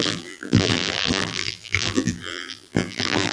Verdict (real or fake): fake